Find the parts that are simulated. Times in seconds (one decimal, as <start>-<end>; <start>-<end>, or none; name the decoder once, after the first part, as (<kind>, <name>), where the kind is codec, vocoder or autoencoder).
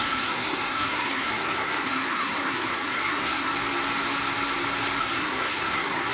0.0-3.5 (codec, SNAC); 5.0-6.1